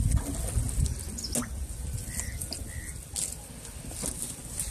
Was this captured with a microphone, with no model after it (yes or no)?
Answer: yes